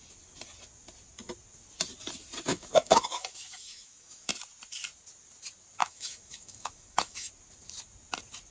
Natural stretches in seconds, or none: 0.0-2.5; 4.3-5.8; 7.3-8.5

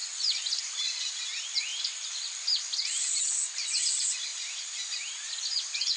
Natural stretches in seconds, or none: 0.6-4.3; 5.4-6.0

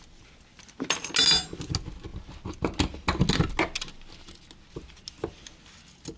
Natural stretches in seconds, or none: 0.0-6.2

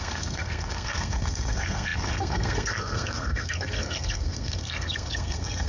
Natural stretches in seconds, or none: none

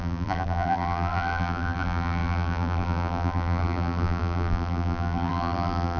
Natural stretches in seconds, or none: none

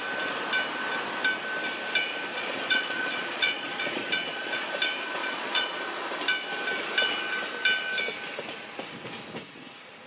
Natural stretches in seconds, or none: 0.0-2.3; 4.7-5.2; 5.8-10.1